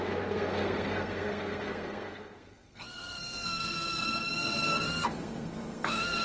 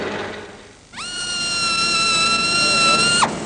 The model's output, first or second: first